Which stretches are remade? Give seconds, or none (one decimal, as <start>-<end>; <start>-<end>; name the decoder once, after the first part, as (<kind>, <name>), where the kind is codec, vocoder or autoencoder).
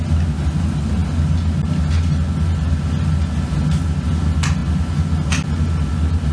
none